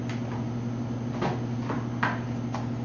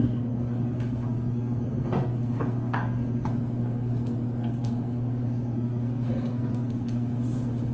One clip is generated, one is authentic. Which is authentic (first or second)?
first